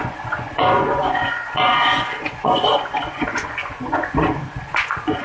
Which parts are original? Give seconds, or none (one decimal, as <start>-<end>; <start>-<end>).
none